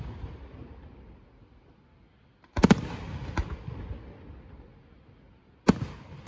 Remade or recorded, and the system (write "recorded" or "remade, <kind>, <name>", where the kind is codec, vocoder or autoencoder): recorded